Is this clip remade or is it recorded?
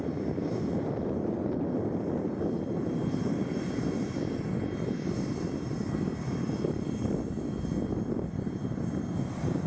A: remade